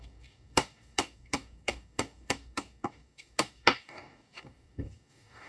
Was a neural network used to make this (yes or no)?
yes